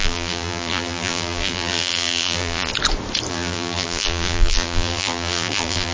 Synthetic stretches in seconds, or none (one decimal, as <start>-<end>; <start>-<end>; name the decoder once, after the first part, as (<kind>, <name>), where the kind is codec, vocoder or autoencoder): 0.0-2.7 (vocoder, BigVGAN v2); 3.3-5.9